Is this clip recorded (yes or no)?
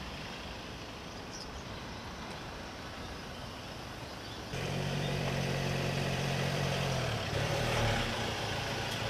no